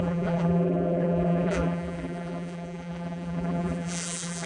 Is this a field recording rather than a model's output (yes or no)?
no